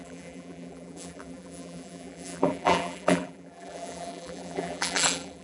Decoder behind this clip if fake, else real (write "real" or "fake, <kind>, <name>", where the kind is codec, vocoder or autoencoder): fake, vocoder, BigVGAN v2